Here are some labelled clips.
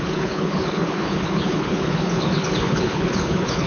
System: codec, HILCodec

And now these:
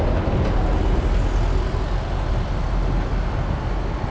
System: none